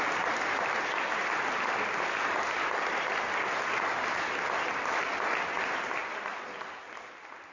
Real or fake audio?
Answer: real